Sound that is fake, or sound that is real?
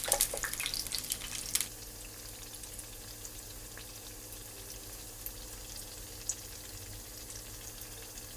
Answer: real